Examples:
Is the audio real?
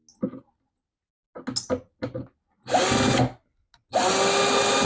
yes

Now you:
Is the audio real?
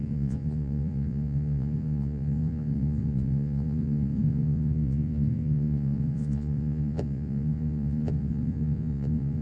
no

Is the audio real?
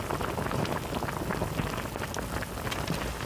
yes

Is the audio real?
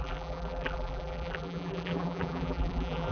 no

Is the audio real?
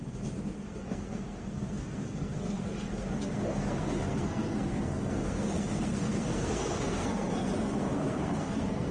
no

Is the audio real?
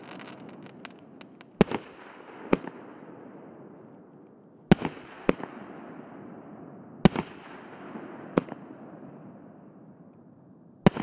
yes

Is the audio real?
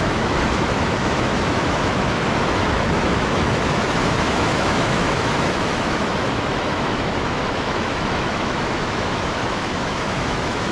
no